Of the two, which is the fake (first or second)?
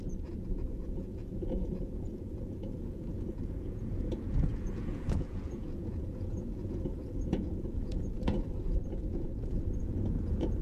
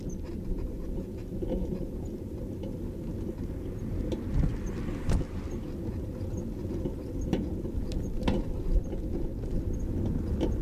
first